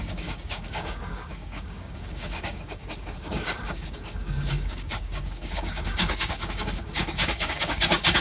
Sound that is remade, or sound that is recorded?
remade